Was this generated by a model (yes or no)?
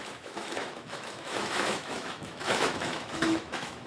yes